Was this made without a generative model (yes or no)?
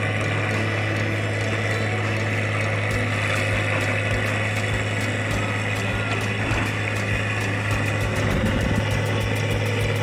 yes